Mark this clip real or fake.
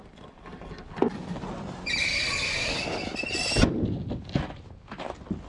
real